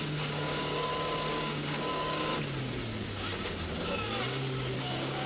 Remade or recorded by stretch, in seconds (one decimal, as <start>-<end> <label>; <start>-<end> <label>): 0.0-0.9 remade; 0.9-1.4 recorded; 1.4-2.3 remade; 2.3-4.8 recorded; 4.8-5.3 remade